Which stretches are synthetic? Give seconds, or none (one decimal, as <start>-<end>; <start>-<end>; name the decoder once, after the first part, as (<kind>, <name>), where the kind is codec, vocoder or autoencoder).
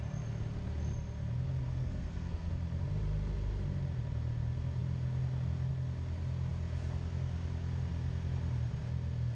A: 1.7-2.5 (codec, SNAC)